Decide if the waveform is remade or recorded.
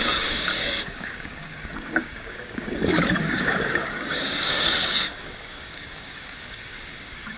remade